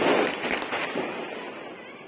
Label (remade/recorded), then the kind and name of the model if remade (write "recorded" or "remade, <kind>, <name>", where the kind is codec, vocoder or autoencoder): recorded